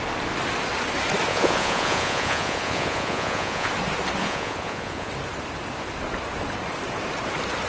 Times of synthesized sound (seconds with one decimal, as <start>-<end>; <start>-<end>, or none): 1.3-3.7; 4.2-5.1